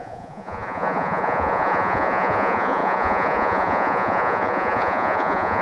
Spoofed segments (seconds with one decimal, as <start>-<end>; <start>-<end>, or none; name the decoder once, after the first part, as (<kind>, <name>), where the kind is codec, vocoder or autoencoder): 0.0-5.6 (vocoder, Vocos)